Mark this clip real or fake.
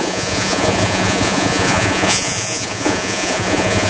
fake